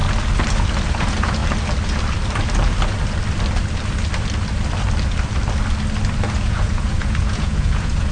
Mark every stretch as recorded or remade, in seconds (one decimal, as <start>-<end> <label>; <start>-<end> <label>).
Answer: 0.0-0.9 recorded; 0.9-1.4 remade; 1.4-6.3 recorded; 6.3-8.1 remade